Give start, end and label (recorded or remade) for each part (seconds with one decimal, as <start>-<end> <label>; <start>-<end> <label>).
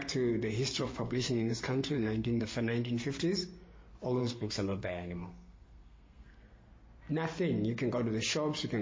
0.0-0.8 recorded; 0.8-3.0 remade; 3.0-4.2 recorded; 4.2-6.7 remade; 6.7-8.8 recorded